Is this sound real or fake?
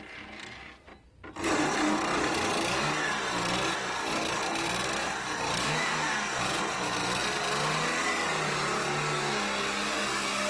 real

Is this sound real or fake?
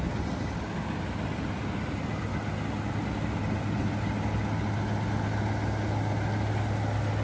real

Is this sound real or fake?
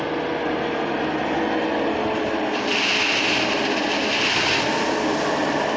real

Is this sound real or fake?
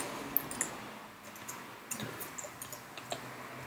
real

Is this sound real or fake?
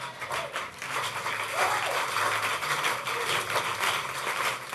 fake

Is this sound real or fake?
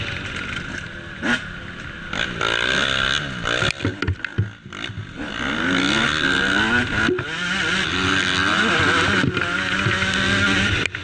real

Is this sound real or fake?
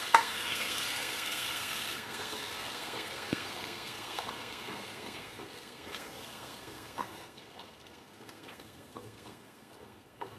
fake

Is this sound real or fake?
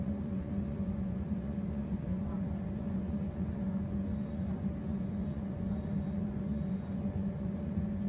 fake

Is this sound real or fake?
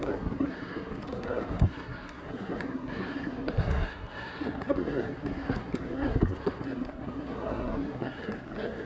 fake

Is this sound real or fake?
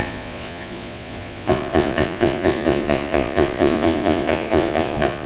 fake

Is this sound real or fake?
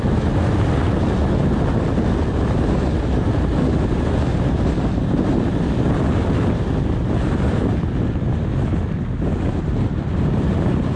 real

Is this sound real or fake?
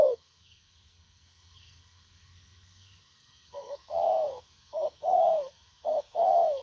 fake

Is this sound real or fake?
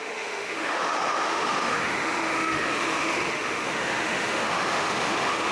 fake